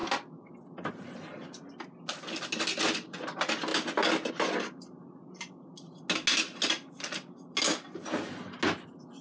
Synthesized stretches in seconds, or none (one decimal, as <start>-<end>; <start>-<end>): none